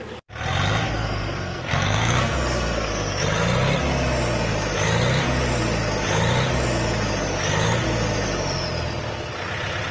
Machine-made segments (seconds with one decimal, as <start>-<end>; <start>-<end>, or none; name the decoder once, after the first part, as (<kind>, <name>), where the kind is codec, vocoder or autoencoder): 1.0-2.9 (codec, SNAC)